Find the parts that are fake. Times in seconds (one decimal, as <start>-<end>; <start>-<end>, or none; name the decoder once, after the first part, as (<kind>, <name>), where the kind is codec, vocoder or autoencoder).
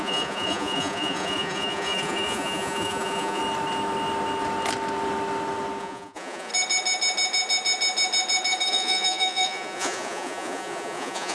0.0-3.4 (vocoder, Vocos); 5.8-6.5; 8.7-11.3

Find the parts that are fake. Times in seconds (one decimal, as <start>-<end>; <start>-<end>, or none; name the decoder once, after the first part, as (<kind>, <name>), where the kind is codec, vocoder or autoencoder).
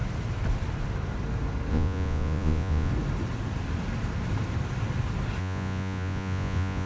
1.7-2.9 (vocoder, Vocos); 5.4-6.9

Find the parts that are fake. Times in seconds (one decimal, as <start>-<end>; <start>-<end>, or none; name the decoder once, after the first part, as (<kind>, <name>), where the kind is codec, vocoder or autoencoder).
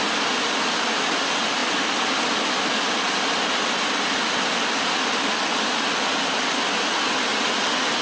7.3-8.0 (vocoder, Vocos)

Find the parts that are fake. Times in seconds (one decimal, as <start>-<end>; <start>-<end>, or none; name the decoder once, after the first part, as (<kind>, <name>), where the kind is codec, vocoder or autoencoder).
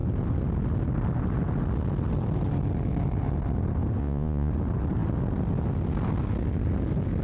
4.0-4.5 (vocoder, Vocos)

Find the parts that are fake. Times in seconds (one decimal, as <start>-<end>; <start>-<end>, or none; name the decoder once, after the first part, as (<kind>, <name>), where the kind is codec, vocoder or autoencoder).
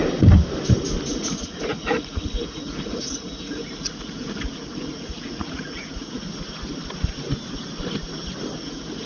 1.1-6.2 (vocoder, Vocos); 8.6-9.1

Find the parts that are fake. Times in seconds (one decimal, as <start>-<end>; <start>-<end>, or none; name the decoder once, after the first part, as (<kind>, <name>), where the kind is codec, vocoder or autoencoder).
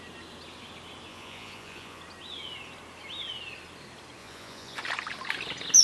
1.1-2.0 (vocoder, Vocos); 4.2-4.8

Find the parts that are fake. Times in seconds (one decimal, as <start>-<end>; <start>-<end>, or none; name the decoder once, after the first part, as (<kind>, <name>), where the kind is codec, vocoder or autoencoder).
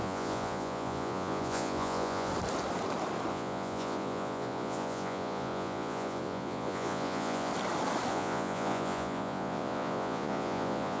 0.0-2.3 (vocoder, Vocos); 3.3-7.5; 8.1-11.0